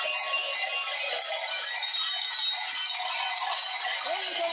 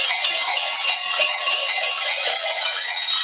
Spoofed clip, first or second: second